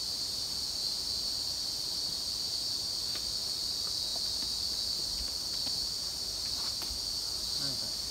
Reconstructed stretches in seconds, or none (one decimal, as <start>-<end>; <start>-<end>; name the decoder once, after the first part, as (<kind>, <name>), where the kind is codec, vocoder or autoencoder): none